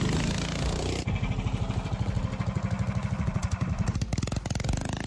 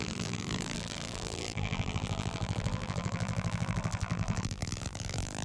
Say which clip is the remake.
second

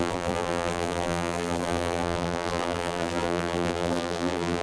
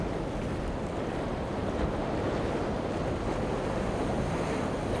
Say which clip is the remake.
first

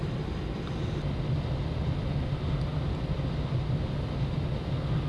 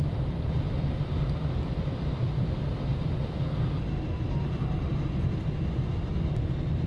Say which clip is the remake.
second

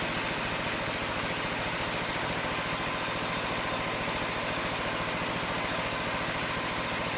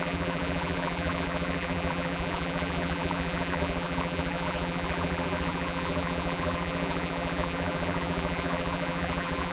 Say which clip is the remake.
second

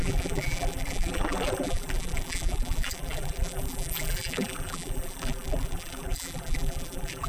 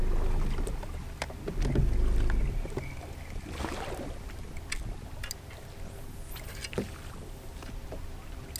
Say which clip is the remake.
first